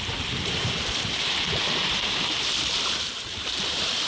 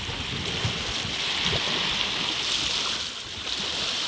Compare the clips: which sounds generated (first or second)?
first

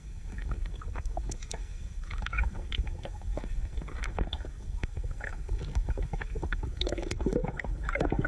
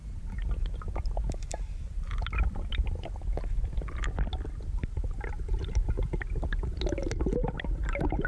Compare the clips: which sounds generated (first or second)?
first